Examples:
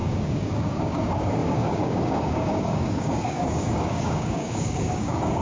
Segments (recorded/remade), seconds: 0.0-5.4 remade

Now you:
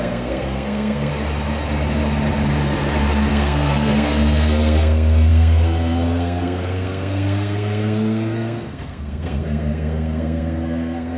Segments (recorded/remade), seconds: 0.0-1.1 remade; 1.1-3.3 recorded; 3.3-11.2 remade

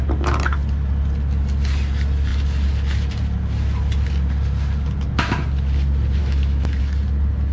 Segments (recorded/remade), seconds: 0.0-6.2 recorded; 6.2-6.8 remade; 6.8-7.5 recorded

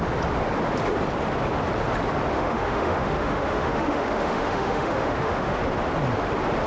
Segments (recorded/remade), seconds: 0.0-2.3 recorded; 2.3-5.6 remade; 5.6-6.7 recorded